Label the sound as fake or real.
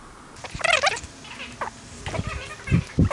real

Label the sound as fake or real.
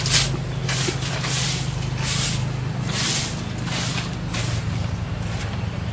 real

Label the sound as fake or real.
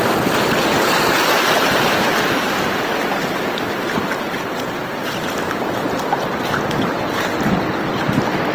real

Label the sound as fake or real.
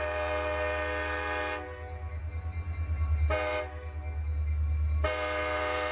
real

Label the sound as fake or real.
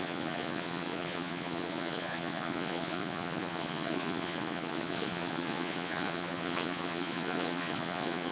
fake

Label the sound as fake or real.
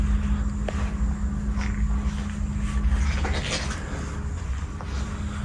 real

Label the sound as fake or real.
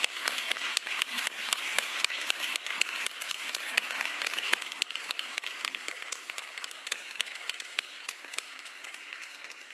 fake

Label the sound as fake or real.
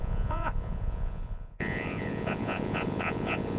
fake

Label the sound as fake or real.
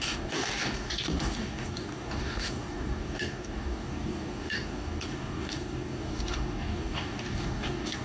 fake